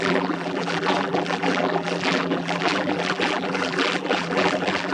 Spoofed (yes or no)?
yes